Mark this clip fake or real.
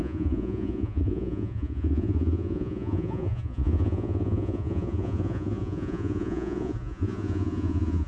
fake